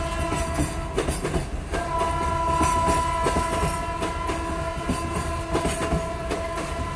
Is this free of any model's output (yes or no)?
yes